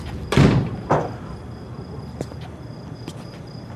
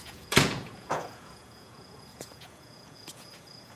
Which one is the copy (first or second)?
second